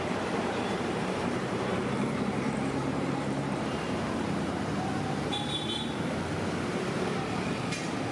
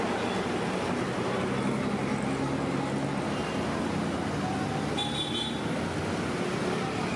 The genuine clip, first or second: second